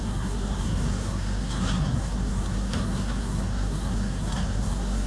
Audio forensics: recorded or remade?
remade